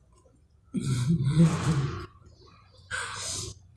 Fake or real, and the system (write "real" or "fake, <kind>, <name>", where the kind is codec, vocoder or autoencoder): fake, vocoder, Vocos